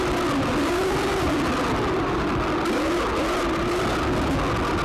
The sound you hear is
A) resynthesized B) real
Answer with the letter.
B